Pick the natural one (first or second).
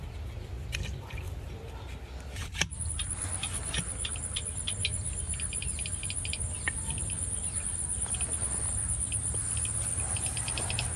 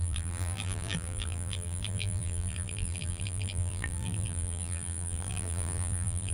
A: first